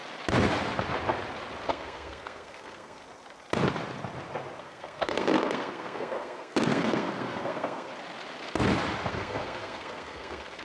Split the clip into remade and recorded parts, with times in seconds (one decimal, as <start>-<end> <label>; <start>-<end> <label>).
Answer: 0.0-1.7 recorded; 1.7-3.0 remade; 3.0-4.6 recorded; 4.6-7.9 remade; 7.9-9.1 recorded; 9.1-10.6 remade